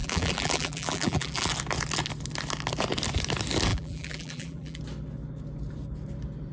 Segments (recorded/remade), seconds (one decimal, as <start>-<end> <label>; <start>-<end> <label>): 0.0-1.5 remade; 1.5-3.7 recorded; 3.7-4.8 remade; 4.8-6.5 recorded